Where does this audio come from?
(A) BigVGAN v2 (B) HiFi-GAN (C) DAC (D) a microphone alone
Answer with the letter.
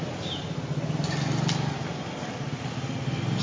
D